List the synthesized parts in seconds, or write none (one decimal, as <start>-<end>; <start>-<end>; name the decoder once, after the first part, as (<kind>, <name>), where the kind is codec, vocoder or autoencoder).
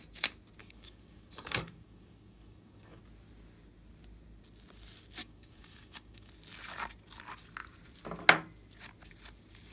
0.6-3.0 (codec, DAC); 5.2-6.3